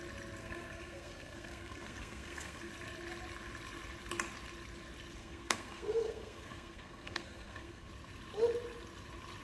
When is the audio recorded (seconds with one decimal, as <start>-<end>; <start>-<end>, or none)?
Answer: 0.0-0.4; 2.7-5.2; 7.9-9.4